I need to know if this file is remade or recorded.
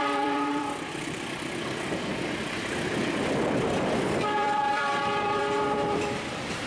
remade